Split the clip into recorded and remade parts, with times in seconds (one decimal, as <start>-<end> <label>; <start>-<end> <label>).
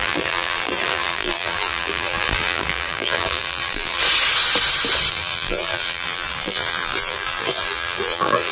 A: 0.0-4.0 remade; 4.0-5.1 recorded; 5.1-8.5 remade